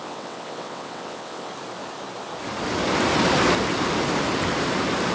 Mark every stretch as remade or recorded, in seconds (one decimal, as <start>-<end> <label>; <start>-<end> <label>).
0.0-1.5 remade; 1.5-5.1 recorded

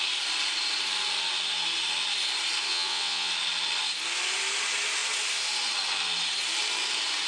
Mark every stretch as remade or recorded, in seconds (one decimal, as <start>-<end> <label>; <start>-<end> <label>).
0.0-2.7 recorded; 2.7-3.3 remade; 3.3-7.3 recorded

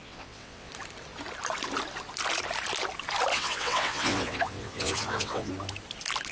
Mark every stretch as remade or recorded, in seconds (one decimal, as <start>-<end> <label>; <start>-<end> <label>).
0.0-0.7 remade; 0.7-3.3 recorded; 3.3-5.5 remade; 5.5-6.3 recorded

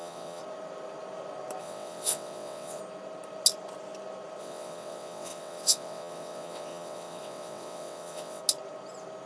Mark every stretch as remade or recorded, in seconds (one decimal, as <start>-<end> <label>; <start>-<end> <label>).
0.0-0.4 remade; 0.4-1.6 recorded; 1.6-2.8 remade; 2.8-4.4 recorded; 4.4-8.4 remade; 8.4-9.3 recorded

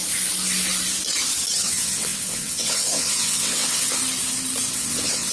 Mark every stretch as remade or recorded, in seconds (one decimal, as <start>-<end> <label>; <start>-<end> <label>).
0.0-1.6 recorded; 1.6-4.0 remade; 4.0-4.7 recorded; 4.7-5.3 remade

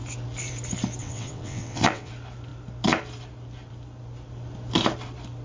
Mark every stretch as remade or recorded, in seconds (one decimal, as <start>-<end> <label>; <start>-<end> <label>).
0.0-1.0 recorded; 1.0-2.1 remade; 2.1-5.4 recorded

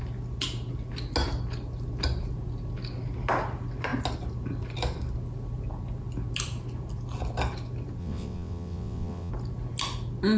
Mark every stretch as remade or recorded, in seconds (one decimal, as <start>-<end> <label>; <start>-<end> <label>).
0.0-8.0 recorded; 8.0-9.3 remade; 9.3-10.4 recorded